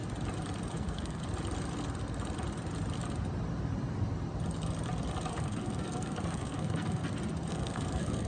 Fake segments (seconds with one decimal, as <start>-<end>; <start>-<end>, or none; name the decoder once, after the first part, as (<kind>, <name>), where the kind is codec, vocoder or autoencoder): 0.7-1.2 (codec, SNAC); 5.3-7.0; 7.5-8.3